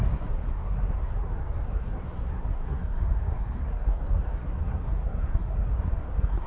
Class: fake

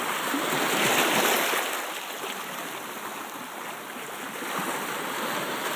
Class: real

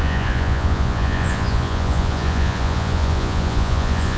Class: fake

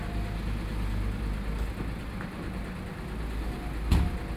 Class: real